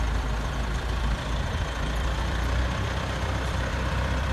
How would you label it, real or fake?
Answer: fake